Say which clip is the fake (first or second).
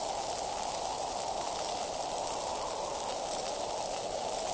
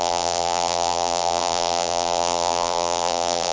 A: second